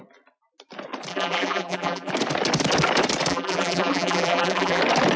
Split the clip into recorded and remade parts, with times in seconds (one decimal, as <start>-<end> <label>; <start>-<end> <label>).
0.0-1.1 recorded; 1.1-2.1 remade; 2.1-3.3 recorded; 3.3-4.8 remade; 4.8-5.2 recorded